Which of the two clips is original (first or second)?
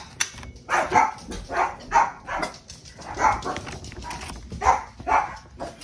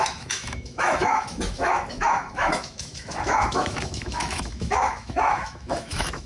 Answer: first